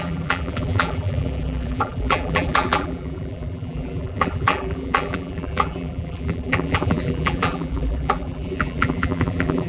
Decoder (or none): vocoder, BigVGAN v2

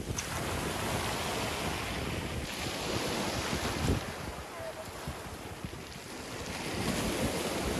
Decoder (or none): none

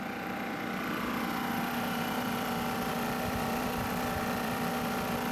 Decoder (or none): vocoder, BigVGAN v2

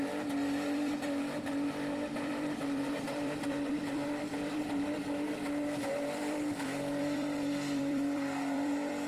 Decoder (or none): vocoder, BigVGAN v2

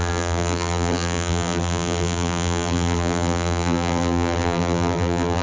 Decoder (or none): vocoder, BigVGAN v2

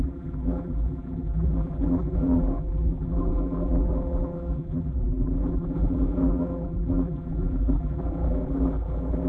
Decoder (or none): vocoder, BigVGAN v2